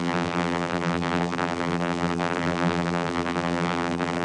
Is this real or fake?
fake